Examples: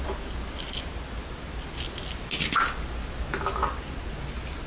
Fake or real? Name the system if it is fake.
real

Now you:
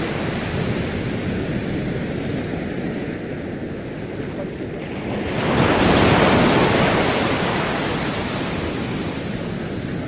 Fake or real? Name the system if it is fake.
real